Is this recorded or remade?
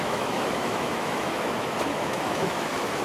remade